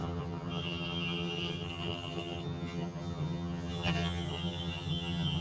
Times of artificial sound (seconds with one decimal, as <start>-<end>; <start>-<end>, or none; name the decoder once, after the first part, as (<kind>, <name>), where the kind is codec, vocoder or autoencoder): 0.0-5.4 (vocoder, HiFi-GAN)